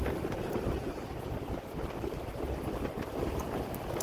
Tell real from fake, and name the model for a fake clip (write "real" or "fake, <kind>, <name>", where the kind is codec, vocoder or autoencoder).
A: real